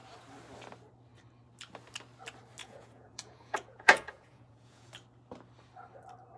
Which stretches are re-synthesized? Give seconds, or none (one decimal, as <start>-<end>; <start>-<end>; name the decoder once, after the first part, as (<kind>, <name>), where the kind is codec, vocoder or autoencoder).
2.6-4.9 (vocoder, Vocos)